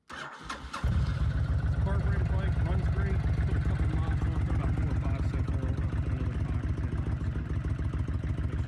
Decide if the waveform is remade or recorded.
recorded